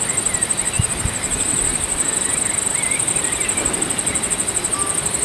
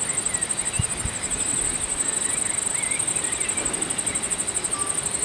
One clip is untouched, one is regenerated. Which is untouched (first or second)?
second